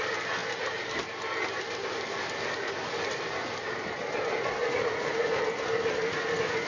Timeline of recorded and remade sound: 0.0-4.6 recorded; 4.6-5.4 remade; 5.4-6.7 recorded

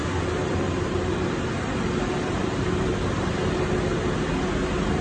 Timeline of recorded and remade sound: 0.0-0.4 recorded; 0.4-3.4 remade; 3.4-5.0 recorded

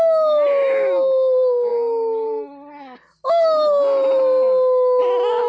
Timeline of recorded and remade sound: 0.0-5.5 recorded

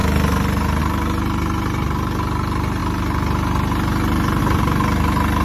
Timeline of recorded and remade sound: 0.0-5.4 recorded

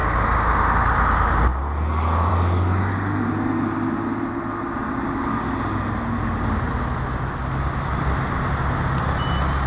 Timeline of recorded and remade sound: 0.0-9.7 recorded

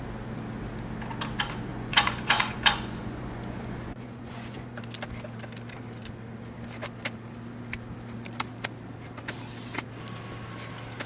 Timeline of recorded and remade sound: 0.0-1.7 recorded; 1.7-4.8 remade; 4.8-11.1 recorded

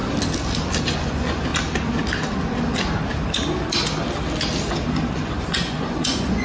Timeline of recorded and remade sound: 0.0-0.8 recorded; 0.8-1.5 remade; 1.5-5.1 recorded; 5.1-6.4 remade